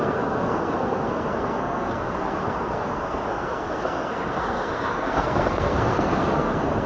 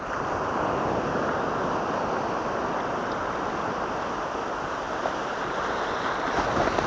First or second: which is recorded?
second